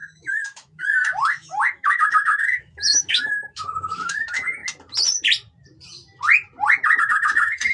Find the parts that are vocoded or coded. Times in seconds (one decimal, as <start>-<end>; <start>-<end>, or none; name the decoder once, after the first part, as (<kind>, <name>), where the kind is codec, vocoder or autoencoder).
0.0-4.6 (autoencoder, DAC-VAE); 7.0-7.7